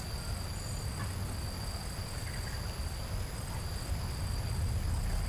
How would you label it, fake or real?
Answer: real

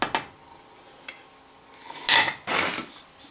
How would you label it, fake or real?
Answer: real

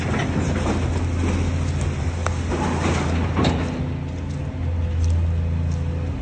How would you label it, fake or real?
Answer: real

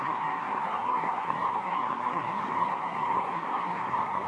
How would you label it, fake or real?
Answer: fake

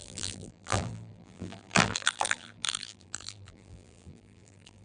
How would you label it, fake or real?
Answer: fake